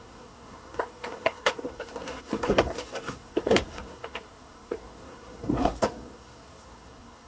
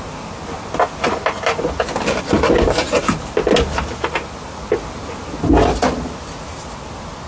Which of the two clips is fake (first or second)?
first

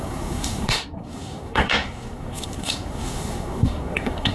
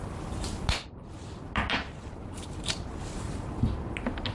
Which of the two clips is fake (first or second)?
first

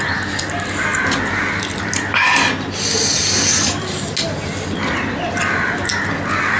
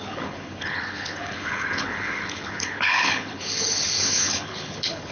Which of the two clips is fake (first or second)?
second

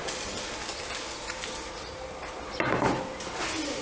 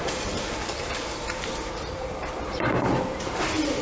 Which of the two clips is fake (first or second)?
second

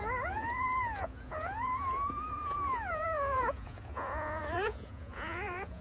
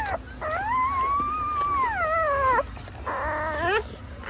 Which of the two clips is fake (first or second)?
first